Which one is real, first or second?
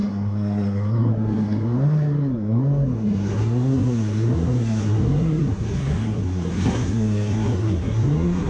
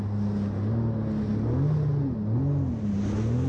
second